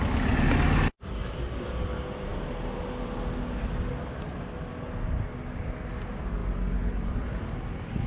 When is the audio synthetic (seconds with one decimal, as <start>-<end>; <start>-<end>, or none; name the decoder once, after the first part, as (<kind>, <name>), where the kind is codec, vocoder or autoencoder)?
none